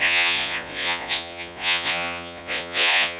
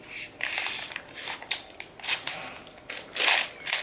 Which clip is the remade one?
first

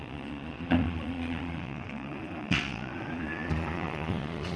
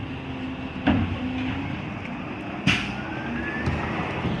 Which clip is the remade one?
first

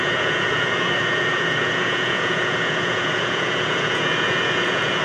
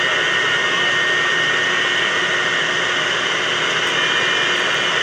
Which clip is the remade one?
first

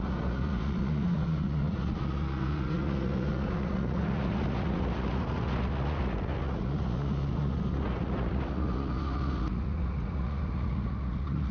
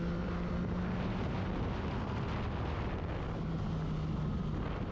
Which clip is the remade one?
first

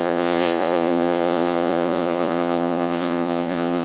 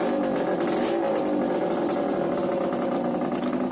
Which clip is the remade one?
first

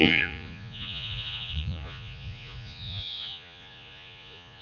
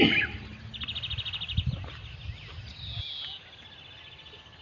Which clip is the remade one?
first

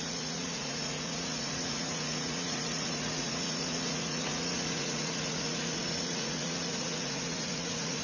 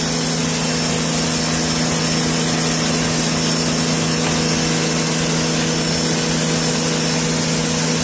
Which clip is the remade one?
first